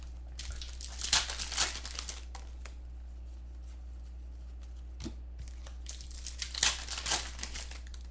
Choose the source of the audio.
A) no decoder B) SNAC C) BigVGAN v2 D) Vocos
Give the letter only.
A